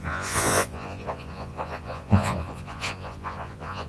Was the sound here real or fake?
fake